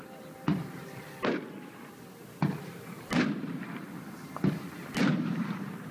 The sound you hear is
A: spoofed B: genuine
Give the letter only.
B